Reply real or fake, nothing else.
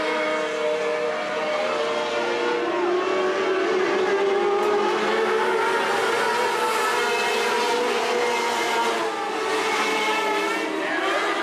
real